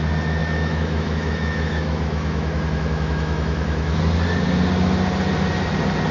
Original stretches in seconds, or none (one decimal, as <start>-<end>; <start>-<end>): 0.0-0.4; 4.0-6.1